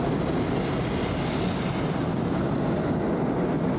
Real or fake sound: real